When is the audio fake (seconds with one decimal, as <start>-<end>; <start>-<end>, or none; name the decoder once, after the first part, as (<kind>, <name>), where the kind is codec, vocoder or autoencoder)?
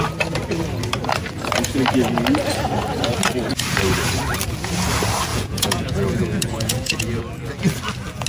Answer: 5.3-7.2 (vocoder, Vocos)